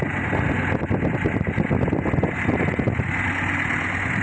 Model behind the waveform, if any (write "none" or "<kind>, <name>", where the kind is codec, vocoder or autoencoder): none